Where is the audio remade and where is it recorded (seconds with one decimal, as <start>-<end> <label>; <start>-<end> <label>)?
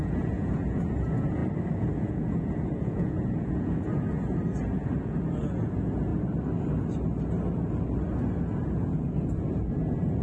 0.0-1.4 remade; 1.4-1.9 recorded; 1.9-6.1 remade; 6.1-8.6 recorded; 8.6-10.2 remade